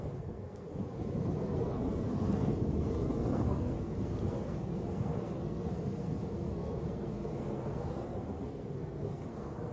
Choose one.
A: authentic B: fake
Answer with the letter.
B